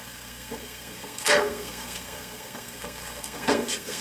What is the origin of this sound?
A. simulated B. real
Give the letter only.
A